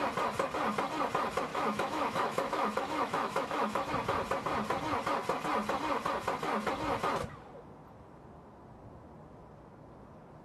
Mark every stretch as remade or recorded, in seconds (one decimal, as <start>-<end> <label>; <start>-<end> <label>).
0.0-1.5 recorded; 1.5-3.9 remade; 3.9-10.4 recorded